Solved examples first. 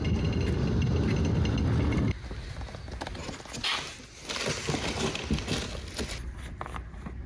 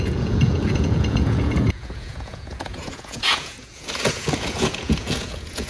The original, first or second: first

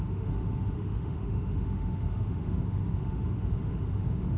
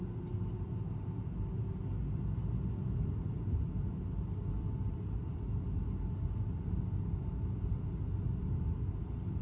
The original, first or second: second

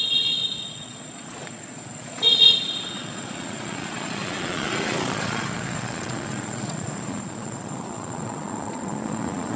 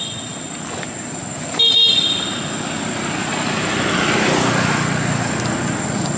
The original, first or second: second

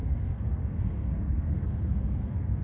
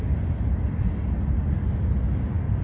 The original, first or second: second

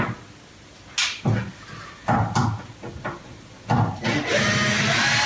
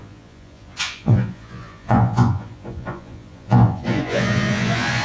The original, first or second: first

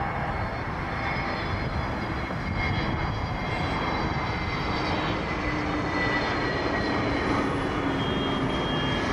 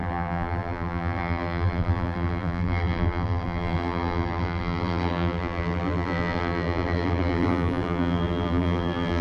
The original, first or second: first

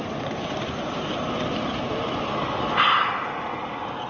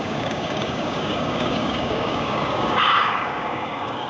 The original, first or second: first